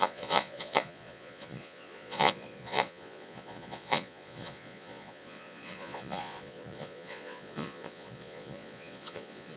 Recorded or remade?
remade